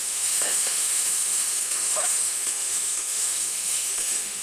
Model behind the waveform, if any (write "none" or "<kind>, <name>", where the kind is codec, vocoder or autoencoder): autoencoder, DAC-VAE